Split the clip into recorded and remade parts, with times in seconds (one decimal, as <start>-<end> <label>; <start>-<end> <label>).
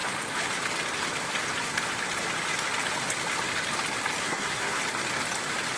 0.0-4.2 recorded; 4.2-4.8 remade; 4.8-5.8 recorded